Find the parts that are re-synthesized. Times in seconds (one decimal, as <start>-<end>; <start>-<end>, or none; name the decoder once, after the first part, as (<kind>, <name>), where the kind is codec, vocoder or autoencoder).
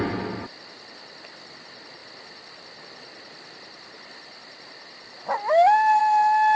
none